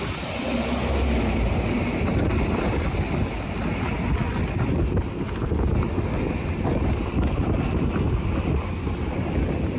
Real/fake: real